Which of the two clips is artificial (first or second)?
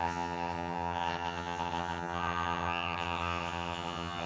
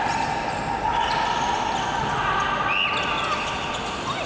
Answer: first